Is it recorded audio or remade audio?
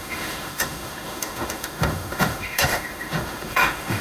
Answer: remade